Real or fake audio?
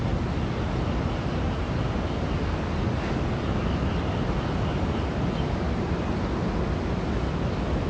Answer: real